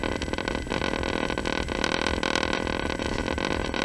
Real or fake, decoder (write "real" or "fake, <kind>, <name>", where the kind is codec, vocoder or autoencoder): real